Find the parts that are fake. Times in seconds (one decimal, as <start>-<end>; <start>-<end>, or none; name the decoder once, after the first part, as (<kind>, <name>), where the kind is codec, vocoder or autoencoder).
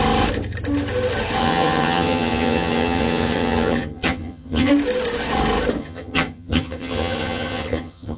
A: 1.4-4.7 (vocoder, HiFi-GAN); 5.8-8.2